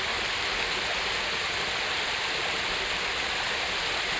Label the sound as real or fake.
real